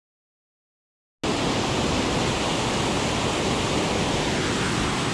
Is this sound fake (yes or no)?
no